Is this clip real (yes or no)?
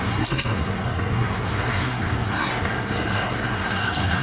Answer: no